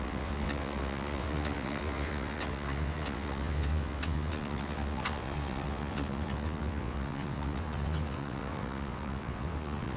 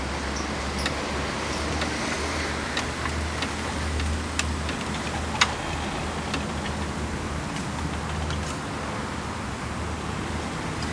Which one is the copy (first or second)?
first